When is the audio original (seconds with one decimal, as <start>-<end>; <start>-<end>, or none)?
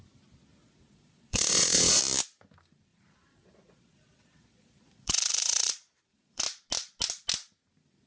0.0-0.6; 2.0-2.9; 6.4-8.1